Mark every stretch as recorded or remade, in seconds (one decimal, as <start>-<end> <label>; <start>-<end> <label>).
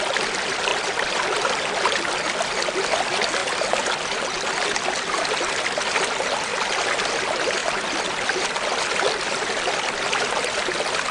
0.0-3.4 recorded; 3.4-4.2 remade; 4.2-7.6 recorded; 7.6-10.0 remade; 10.0-11.1 recorded